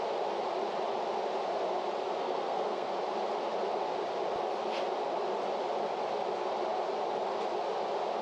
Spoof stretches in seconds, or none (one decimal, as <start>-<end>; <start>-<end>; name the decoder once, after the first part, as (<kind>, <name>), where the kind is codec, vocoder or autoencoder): 2.2-2.9 (codec, SNAC)